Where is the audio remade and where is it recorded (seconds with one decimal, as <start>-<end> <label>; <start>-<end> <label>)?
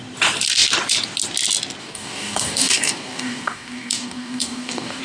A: 0.0-1.8 recorded; 1.8-5.0 remade